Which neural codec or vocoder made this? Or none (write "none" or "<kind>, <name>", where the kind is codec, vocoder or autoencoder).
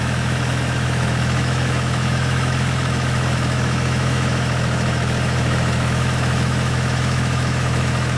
autoencoder, DAC-VAE